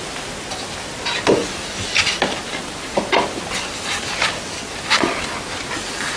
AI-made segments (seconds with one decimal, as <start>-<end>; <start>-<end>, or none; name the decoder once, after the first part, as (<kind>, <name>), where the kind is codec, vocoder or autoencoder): none